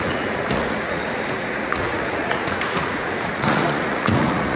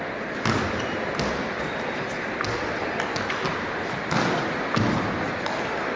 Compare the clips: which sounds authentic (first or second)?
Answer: second